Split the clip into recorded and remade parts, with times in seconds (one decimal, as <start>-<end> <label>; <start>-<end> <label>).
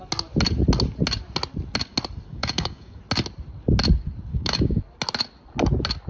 0.0-2.3 recorded; 2.3-3.0 remade; 3.0-4.3 recorded; 4.3-4.8 remade; 4.8-6.1 recorded